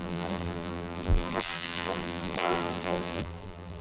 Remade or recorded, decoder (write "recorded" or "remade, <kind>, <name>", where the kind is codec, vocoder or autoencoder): remade, vocoder, BigVGAN v2